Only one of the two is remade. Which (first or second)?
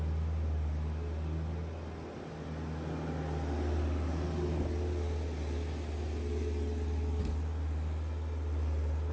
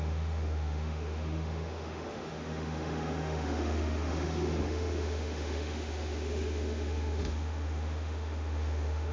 second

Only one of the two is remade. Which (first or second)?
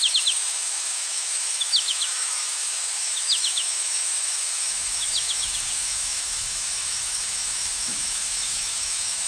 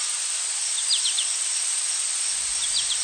first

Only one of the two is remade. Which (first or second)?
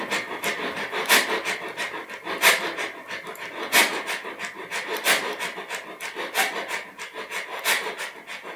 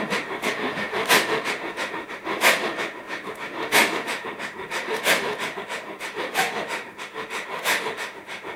second